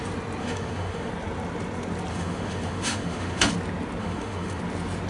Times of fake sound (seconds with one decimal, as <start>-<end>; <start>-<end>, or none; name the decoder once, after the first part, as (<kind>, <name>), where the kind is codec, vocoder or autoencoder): 0.4-1.1 (autoencoder, DAC-VAE); 2.1-3.5; 4.0-4.6